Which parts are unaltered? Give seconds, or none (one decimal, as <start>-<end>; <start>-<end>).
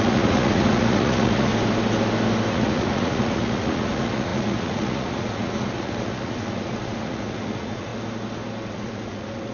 1.5-2.5; 7.9-8.7